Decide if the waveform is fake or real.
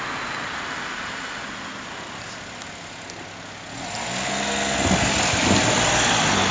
real